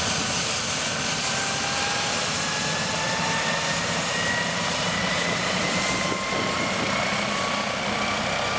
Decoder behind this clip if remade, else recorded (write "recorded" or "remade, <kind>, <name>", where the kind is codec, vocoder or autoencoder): recorded